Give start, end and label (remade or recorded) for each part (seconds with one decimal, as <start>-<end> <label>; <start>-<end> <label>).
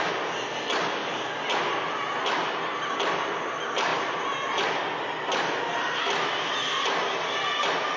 0.0-8.0 recorded